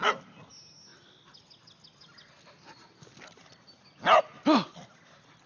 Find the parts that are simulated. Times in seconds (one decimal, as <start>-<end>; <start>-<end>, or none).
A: none